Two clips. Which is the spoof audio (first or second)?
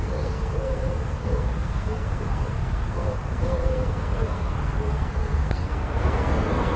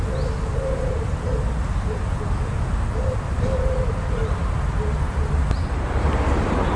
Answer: first